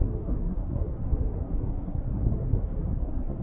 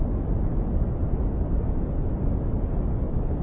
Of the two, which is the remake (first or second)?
first